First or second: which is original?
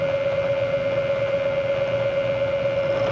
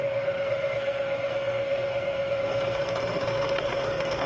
first